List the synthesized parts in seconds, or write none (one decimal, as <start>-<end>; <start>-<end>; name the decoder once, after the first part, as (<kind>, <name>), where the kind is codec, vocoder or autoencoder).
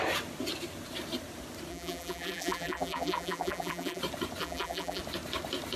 1.7-4.0 (vocoder, BigVGAN v2); 4.4-5.0